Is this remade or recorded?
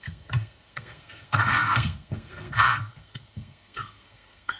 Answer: remade